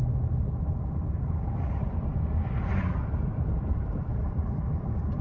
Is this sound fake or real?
fake